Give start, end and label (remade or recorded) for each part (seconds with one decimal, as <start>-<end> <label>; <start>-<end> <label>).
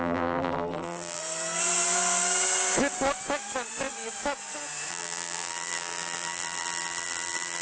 0.0-1.2 remade; 1.2-4.9 recorded; 4.9-7.6 remade